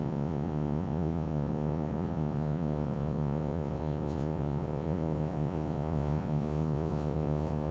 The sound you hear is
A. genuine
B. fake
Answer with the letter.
B